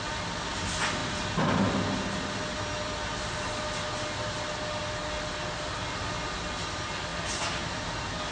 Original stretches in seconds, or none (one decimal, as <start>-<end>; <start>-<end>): 0.0-8.3